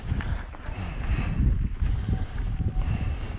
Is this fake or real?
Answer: fake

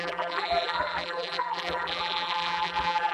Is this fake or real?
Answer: fake